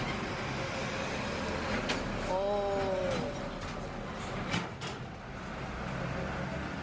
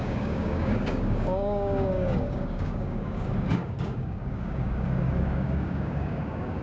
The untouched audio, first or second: first